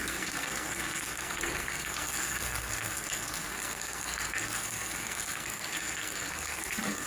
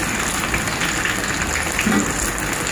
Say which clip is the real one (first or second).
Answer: second